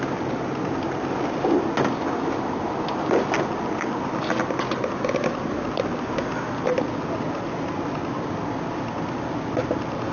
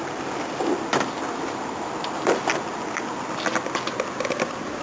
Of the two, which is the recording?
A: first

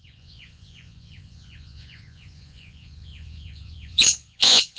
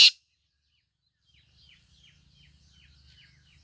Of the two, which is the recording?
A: second